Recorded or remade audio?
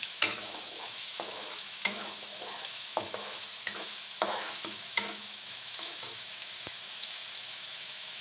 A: remade